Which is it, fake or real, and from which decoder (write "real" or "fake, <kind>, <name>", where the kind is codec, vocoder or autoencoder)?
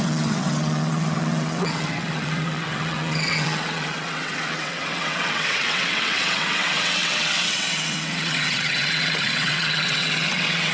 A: fake, vocoder, WaveNeXt